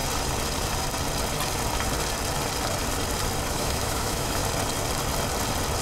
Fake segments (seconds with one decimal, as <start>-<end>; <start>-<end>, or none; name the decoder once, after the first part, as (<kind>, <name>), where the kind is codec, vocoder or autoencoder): 3.5-4.4 (autoencoder, DAC-VAE)